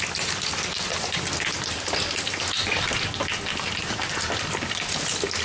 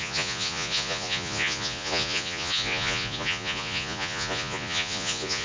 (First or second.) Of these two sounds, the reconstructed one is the second